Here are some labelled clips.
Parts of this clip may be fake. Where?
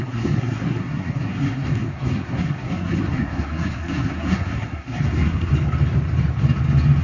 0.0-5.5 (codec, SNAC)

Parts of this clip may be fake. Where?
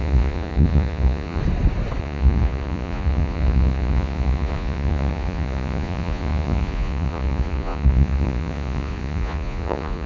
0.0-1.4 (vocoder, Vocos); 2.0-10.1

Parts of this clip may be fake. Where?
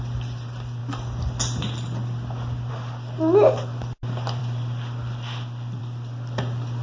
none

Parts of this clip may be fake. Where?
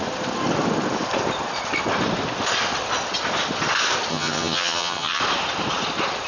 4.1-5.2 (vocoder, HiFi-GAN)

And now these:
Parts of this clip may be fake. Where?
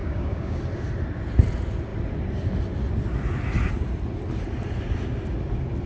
0.0-0.6 (codec, DAC)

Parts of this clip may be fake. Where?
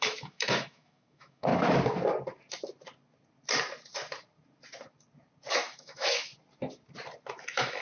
0.0-1.5 (autoencoder, DAC-VAE); 5.5-6.3; 7.3-7.8